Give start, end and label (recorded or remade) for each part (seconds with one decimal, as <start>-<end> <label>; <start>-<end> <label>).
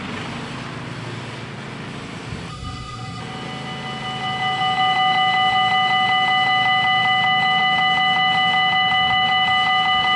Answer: 0.0-2.5 recorded; 2.5-3.2 remade; 3.2-10.2 recorded